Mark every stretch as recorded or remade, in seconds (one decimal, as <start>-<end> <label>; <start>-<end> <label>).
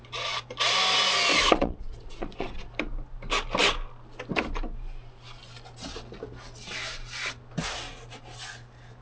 0.0-1.3 recorded; 1.3-2.7 remade; 2.7-9.0 recorded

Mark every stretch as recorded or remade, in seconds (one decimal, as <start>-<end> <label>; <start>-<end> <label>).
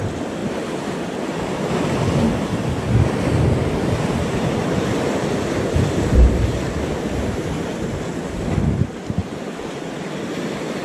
0.0-10.8 recorded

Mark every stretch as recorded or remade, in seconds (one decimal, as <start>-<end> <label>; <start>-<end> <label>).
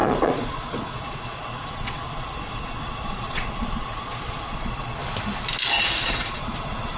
0.0-5.0 remade; 5.0-6.0 recorded; 6.0-7.0 remade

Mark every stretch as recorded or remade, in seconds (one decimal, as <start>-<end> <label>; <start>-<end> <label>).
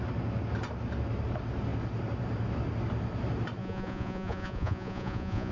0.0-3.6 recorded; 3.6-5.5 remade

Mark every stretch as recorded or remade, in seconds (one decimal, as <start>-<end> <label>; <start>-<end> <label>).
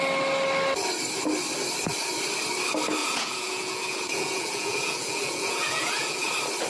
0.0-3.0 recorded; 3.0-6.3 remade; 6.3-6.7 recorded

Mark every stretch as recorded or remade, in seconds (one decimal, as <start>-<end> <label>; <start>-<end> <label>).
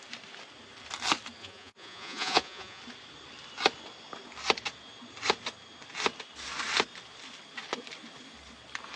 0.0-1.4 recorded; 1.4-2.8 remade; 2.8-9.0 recorded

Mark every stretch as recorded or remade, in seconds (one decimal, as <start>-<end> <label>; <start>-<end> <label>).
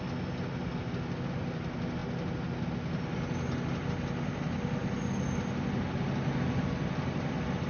0.0-7.7 recorded